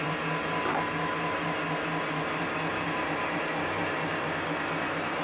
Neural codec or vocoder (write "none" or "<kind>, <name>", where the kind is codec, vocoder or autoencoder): vocoder, BigVGAN v2